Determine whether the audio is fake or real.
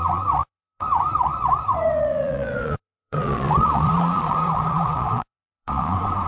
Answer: fake